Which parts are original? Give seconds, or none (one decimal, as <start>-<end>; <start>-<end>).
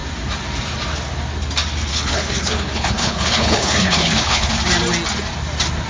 0.0-1.9; 4.5-5.9